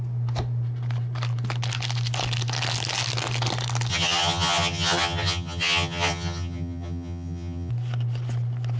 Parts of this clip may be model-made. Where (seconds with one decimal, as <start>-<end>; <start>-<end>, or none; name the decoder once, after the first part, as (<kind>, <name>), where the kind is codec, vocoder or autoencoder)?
3.9-7.7 (vocoder, HiFi-GAN)